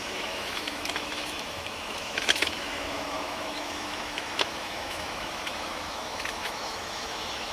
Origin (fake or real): fake